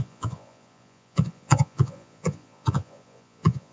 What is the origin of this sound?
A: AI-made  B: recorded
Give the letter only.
A